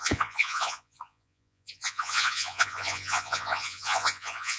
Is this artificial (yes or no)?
yes